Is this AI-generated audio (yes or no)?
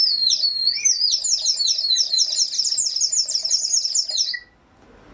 no